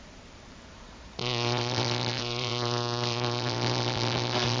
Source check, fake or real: fake